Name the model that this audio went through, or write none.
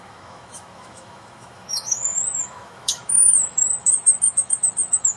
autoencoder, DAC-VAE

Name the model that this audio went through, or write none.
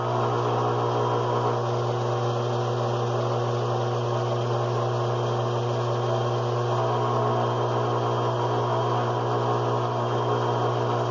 none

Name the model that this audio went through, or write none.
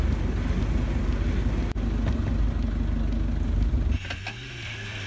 none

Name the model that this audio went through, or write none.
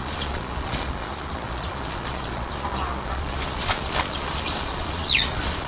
vocoder, Vocos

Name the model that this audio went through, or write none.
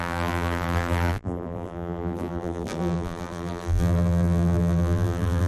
vocoder, BigVGAN v2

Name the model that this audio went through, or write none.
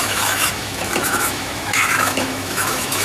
autoencoder, DAC-VAE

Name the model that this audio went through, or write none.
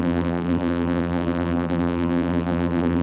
vocoder, BigVGAN v2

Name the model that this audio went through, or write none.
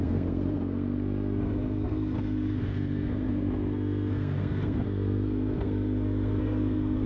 codec, SNAC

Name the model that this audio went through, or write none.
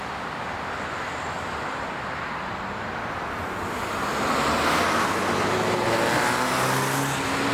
none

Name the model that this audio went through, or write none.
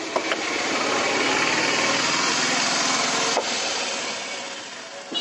none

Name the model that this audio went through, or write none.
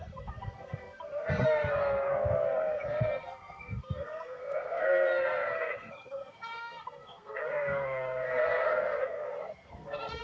codec, SNAC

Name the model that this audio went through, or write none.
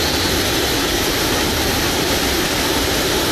none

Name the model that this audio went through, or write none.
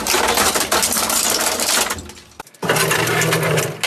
none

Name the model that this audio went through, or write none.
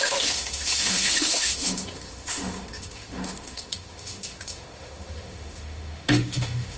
autoencoder, DAC-VAE